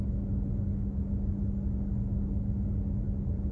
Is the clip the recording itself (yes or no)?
yes